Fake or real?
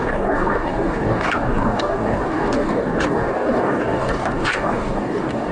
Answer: fake